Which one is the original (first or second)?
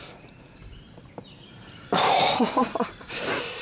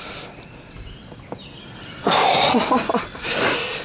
second